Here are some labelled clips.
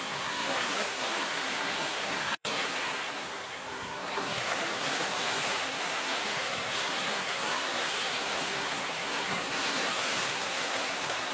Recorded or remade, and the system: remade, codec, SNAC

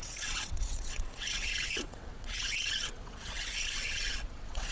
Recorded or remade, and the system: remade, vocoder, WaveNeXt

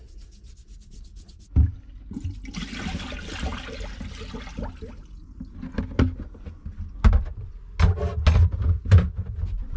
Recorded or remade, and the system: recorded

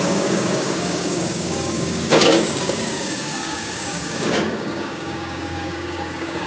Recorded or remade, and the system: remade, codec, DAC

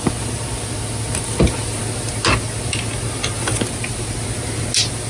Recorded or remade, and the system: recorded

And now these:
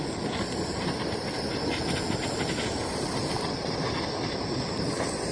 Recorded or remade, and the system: recorded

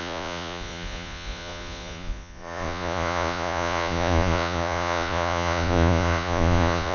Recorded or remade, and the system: remade, vocoder, Vocos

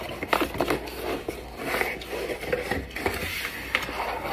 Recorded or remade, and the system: recorded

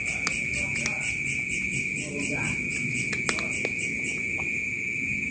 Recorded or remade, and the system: recorded